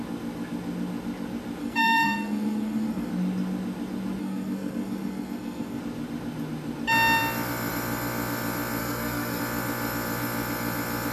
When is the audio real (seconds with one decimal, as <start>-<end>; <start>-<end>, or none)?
0.0-1.6; 3.1-4.2; 5.8-8.8; 9.4-11.1